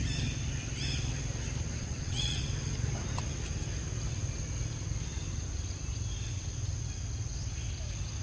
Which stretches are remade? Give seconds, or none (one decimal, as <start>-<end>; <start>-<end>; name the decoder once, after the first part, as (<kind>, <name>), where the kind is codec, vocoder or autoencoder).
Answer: 1.8-2.5 (vocoder, WaveNeXt)